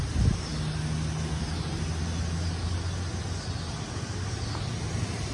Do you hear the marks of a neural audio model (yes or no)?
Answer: no